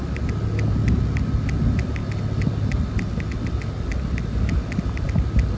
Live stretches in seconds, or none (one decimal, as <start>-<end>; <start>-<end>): 0.0-5.6